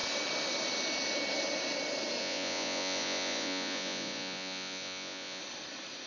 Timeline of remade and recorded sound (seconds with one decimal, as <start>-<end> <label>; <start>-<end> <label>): 0.0-2.2 recorded; 2.2-5.4 remade; 5.4-6.1 recorded